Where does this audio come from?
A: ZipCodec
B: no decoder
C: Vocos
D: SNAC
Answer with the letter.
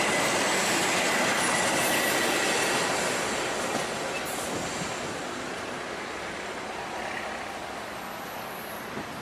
B